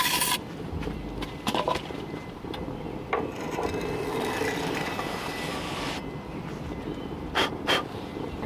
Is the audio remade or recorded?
remade